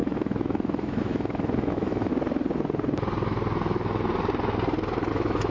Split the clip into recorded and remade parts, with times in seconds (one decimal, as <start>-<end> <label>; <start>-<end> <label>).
0.0-2.1 remade; 2.1-5.1 recorded; 5.1-5.5 remade